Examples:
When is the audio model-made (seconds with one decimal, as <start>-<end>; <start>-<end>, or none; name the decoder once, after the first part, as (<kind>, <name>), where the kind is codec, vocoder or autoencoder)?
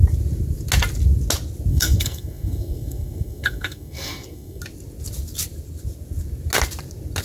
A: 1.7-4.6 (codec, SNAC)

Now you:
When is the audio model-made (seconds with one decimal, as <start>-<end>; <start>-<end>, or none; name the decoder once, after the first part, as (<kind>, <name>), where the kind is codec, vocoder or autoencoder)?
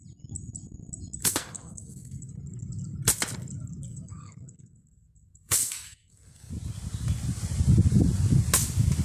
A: 1.2-2.3 (codec, SNAC); 3.9-6.5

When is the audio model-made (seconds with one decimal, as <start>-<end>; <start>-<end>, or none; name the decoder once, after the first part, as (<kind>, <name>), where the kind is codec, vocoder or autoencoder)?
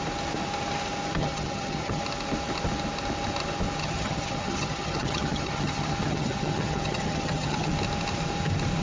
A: 1.2-2.0 (vocoder, HiFi-GAN); 3.8-7.7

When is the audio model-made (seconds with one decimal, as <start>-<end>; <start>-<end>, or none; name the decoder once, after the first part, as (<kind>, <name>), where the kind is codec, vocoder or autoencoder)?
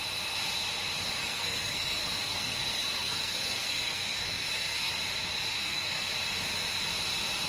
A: 1.2-4.9 (codec, SNAC); 5.5-6.1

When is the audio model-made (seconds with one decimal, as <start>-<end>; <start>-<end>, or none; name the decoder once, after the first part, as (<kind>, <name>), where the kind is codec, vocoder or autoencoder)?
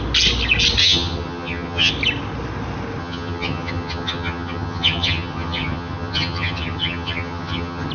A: 0.8-1.9 (vocoder, HiFi-GAN); 3.0-7.9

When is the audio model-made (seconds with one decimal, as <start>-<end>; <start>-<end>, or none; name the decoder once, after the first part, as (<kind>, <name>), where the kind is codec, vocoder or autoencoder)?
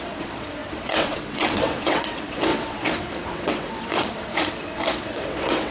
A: 0.0-5.7 (vocoder, WaveNeXt)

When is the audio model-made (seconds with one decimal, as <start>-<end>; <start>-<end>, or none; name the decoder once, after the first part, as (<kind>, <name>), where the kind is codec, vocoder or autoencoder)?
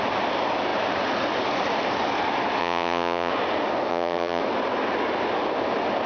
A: 2.6-3.3 (vocoder, HiFi-GAN); 3.9-4.4